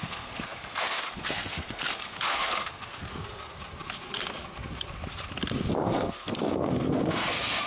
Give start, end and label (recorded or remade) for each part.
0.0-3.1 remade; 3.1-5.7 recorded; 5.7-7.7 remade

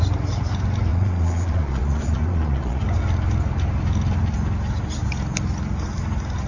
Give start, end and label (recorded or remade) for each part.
0.0-0.9 recorded; 0.9-2.8 remade; 2.8-6.5 recorded

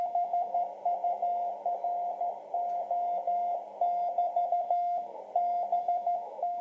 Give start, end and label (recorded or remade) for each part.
0.0-0.5 remade; 0.5-4.5 recorded; 4.5-5.2 remade; 5.2-5.8 recorded; 5.8-6.6 remade

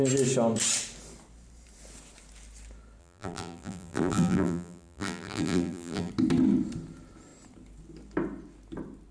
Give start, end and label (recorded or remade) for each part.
0.0-3.0 recorded; 3.0-6.1 remade; 6.1-9.1 recorded